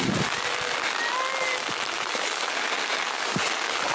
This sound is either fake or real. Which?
real